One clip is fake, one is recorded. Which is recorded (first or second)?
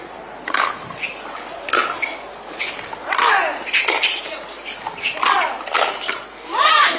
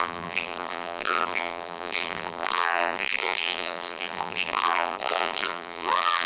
first